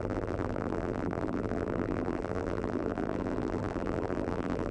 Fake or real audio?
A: fake